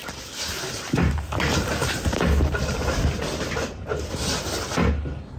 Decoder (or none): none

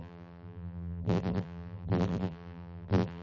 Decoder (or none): vocoder, BigVGAN v2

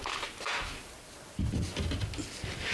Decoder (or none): none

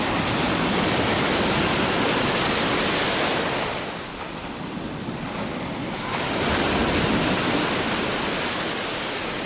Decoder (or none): none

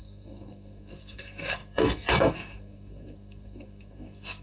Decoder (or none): codec, SNAC